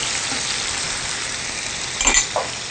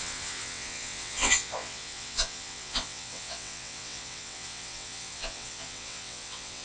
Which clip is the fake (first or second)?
second